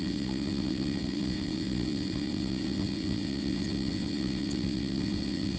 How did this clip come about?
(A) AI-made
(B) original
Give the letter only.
A